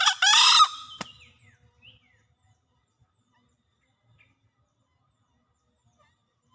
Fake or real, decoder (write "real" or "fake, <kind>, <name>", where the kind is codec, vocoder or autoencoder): real